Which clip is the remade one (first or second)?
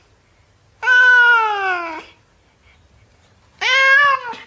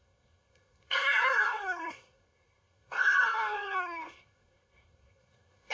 second